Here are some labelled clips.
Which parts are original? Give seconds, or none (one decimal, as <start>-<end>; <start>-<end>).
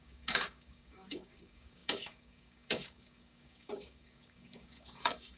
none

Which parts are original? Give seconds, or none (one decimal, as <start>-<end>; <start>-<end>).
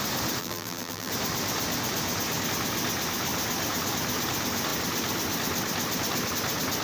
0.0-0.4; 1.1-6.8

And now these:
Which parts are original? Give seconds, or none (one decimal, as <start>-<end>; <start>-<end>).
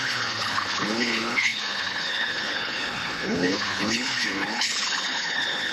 none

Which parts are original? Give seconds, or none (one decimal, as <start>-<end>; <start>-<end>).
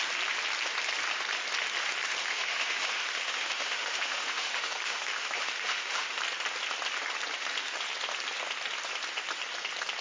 0.0-2.2; 6.2-10.0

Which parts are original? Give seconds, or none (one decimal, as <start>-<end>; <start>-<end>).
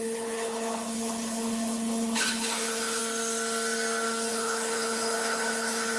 3.0-4.3